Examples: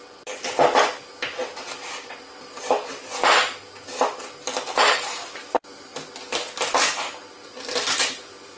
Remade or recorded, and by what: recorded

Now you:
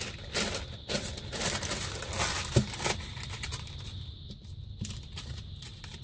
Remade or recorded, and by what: recorded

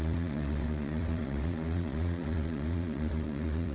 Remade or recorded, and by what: remade, vocoder, WaveNeXt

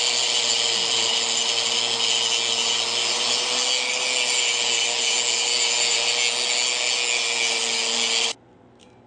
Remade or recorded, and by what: recorded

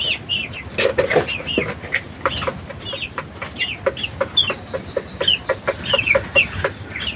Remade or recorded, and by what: recorded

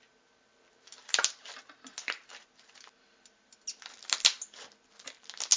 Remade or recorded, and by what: recorded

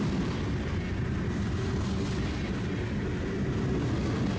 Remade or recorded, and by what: recorded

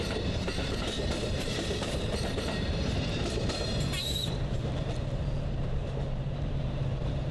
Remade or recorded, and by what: remade, vocoder, BigVGAN v2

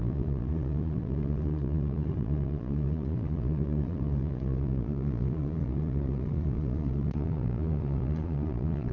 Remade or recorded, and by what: remade, vocoder, Vocos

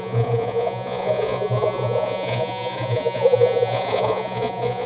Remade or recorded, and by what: remade, vocoder, Vocos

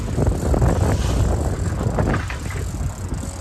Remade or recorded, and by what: recorded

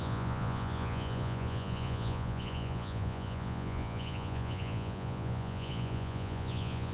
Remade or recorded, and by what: remade, vocoder, Vocos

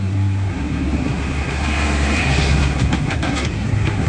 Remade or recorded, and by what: remade, codec, SNAC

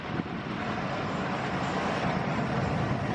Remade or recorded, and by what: recorded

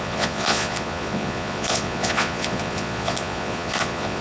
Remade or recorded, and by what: remade, vocoder, Vocos